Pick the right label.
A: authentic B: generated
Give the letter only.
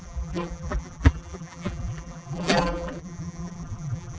B